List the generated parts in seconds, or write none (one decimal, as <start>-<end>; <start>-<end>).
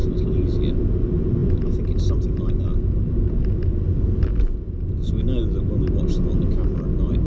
none